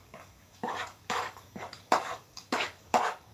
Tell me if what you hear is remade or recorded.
remade